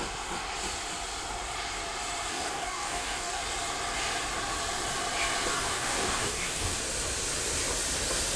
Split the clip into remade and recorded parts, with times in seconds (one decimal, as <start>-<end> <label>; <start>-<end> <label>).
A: 0.0-2.3 recorded; 2.3-3.4 remade; 3.4-5.5 recorded; 5.5-6.8 remade; 6.8-8.4 recorded